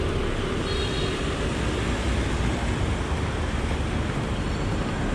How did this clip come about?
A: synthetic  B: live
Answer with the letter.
B